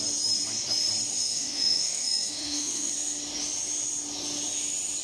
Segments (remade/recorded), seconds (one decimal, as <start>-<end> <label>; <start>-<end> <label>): 0.0-1.1 recorded; 1.1-2.9 remade; 2.9-5.0 recorded

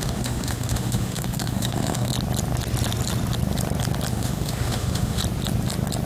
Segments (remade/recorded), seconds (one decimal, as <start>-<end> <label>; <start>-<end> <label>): 0.0-2.1 remade; 2.1-4.1 recorded; 4.1-5.2 remade; 5.2-6.1 recorded